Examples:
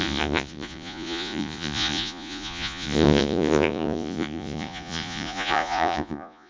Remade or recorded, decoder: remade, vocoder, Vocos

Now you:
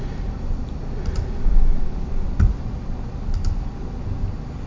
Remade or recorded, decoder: recorded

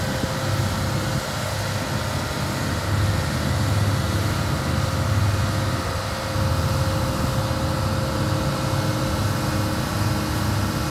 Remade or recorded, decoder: recorded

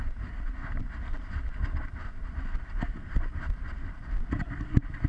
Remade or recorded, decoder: recorded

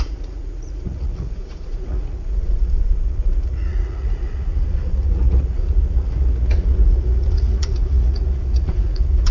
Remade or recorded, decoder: remade, vocoder, Vocos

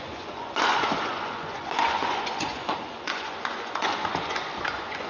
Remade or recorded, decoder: remade, vocoder, Vocos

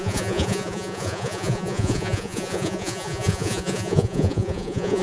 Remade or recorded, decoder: remade, vocoder, Vocos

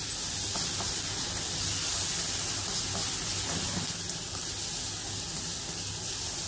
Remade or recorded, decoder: recorded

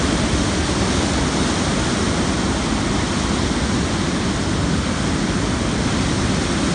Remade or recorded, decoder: recorded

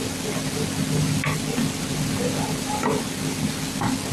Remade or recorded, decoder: recorded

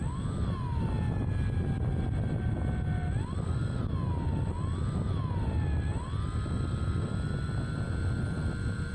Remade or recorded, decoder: recorded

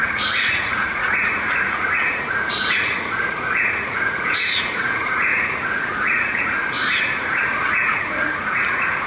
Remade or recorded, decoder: remade, vocoder, Vocos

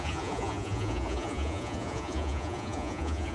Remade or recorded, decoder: remade, vocoder, Vocos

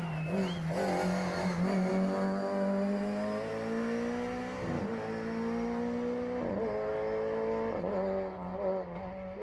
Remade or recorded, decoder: recorded